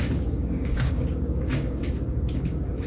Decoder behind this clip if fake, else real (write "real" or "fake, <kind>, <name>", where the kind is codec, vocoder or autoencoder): fake, codec, DAC